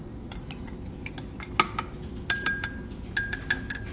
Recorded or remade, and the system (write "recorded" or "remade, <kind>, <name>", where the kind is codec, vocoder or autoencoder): recorded